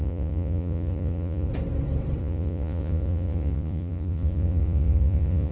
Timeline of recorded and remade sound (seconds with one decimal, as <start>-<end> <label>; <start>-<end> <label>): 0.0-1.5 remade; 1.5-2.2 recorded; 2.2-5.5 remade